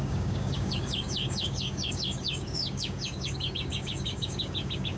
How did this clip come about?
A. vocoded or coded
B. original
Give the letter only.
A